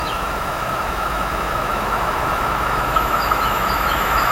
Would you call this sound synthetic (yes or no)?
yes